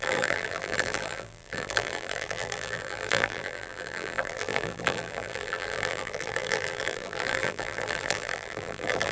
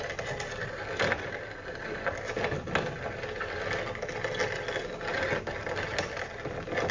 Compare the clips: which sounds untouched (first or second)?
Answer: second